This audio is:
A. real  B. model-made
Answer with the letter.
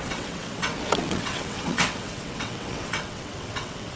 B